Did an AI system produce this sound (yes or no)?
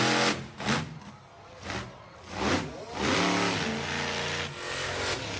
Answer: no